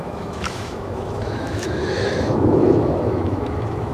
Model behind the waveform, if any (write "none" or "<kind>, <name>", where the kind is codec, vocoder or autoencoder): autoencoder, DAC-VAE